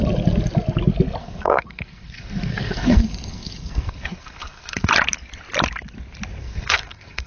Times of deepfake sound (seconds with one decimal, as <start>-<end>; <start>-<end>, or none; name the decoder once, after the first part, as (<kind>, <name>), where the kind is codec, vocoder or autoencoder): 1.2-4.9 (codec, SNAC); 6.4-7.3